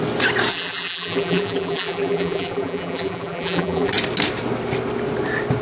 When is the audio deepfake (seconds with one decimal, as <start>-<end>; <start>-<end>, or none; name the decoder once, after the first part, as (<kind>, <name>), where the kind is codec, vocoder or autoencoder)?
0.5-3.9 (vocoder, BigVGAN v2)